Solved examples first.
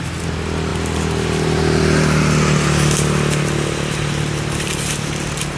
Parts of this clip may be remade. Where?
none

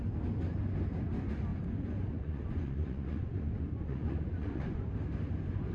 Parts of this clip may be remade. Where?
1.5-4.9 (vocoder, Vocos)

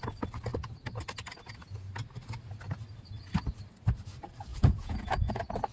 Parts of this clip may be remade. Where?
4.5-5.3 (vocoder, Vocos)

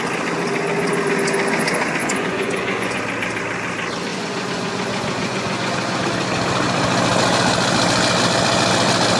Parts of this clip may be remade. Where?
2.0-3.0 (vocoder, Vocos); 4.1-6.0

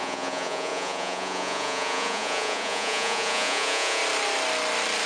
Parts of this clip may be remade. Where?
0.0-4.0 (vocoder, Vocos)

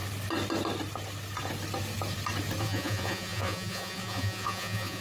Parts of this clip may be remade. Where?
2.6-5.0 (vocoder, Vocos)